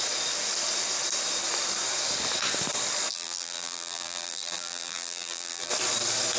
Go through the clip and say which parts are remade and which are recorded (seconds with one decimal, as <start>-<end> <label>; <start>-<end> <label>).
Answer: 0.0-3.1 recorded; 3.1-5.7 remade; 5.7-6.4 recorded